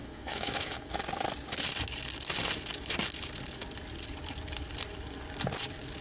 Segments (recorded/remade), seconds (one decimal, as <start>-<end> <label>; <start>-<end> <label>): 0.0-0.9 remade; 0.9-6.0 recorded